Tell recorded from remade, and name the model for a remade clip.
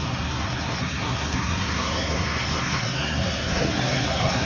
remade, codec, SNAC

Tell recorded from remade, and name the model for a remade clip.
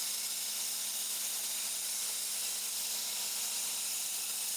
recorded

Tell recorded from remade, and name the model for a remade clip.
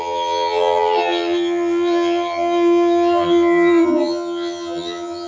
remade, vocoder, HiFi-GAN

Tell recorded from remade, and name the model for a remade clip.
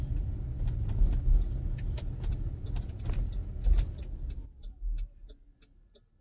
recorded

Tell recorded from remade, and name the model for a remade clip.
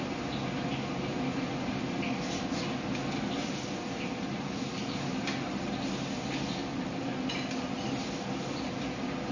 recorded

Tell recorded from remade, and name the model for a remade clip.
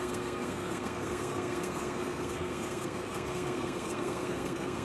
remade, codec, SNAC